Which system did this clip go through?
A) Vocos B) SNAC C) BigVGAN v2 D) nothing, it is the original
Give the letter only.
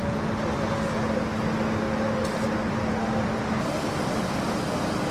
D